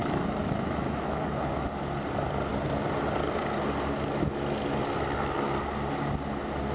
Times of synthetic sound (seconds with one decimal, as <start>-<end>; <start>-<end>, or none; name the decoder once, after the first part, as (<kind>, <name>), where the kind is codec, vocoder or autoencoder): 0.0-1.7 (autoencoder, DAC-VAE)